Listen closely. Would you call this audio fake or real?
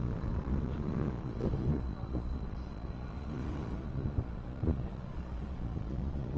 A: fake